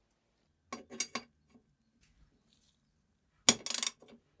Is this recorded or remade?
recorded